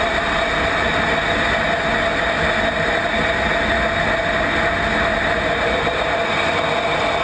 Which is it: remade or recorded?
recorded